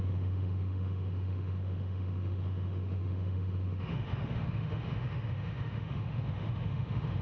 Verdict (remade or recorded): remade